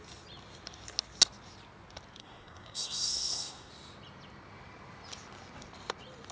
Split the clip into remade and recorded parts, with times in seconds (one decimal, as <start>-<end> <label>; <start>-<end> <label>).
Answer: 0.0-2.2 recorded; 2.2-3.7 remade; 3.7-6.3 recorded